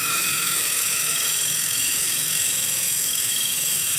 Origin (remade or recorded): remade